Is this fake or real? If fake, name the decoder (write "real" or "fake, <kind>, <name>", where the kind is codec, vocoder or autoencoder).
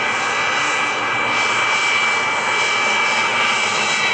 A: real